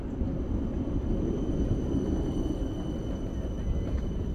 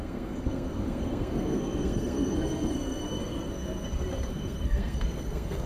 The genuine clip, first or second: first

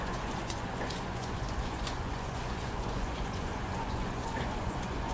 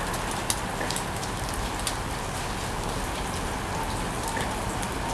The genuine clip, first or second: second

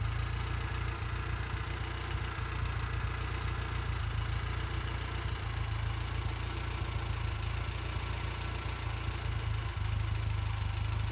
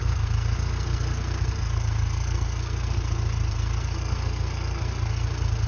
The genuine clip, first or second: first